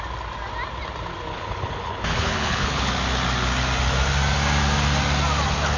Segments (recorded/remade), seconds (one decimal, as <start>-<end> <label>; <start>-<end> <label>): 0.0-1.3 recorded; 1.3-2.9 remade; 2.9-5.8 recorded